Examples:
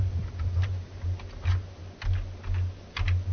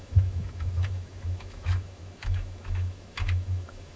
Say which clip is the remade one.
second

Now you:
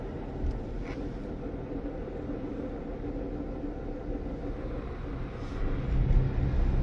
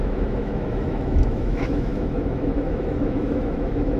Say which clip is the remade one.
second